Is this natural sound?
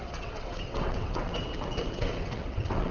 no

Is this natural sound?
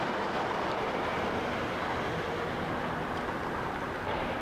yes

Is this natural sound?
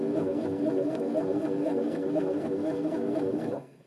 no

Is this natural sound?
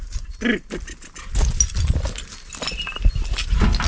yes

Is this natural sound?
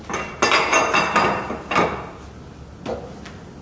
yes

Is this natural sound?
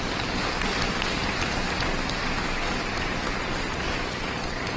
yes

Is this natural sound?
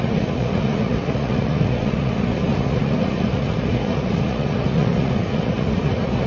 no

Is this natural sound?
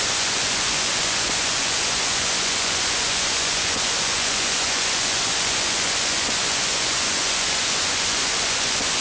no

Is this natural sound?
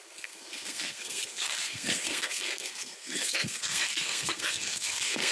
no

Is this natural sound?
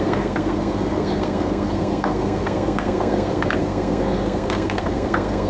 no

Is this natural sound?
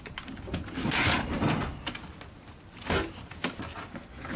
yes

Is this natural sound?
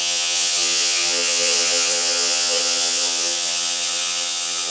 no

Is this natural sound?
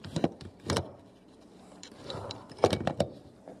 no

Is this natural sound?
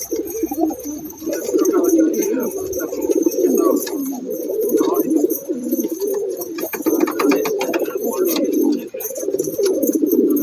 no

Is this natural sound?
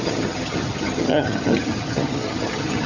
no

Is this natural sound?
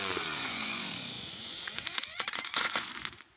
no